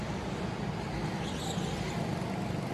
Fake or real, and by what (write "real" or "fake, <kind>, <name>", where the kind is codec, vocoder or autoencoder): real